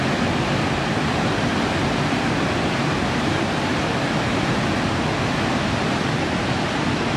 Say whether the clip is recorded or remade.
recorded